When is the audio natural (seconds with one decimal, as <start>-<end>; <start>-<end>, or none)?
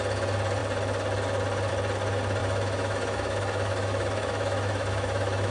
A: 0.0-2.4